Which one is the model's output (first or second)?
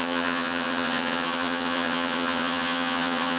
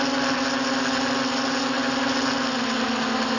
first